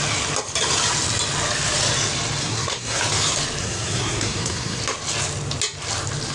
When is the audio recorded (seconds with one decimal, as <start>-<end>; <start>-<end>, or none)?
0.0-2.4; 3.0-3.6; 4.8-6.3